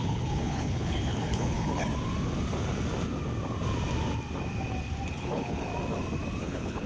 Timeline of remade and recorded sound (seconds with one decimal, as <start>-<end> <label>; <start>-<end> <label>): 0.0-1.9 remade; 1.9-5.1 recorded; 5.1-5.7 remade; 5.7-6.4 recorded; 6.4-6.9 remade